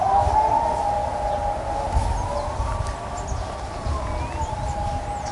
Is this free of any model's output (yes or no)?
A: yes